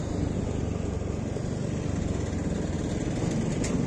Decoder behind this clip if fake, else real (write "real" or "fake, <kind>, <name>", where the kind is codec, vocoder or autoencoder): real